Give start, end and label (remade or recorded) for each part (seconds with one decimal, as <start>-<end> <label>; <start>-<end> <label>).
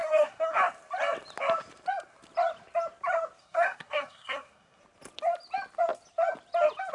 0.0-0.6 remade; 0.6-3.4 recorded; 3.4-4.8 remade; 4.8-6.9 recorded